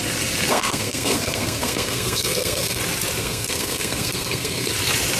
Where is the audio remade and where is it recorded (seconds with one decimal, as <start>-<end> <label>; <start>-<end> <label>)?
0.0-0.5 recorded; 0.5-2.8 remade; 2.8-3.2 recorded; 3.2-4.7 remade; 4.7-5.2 recorded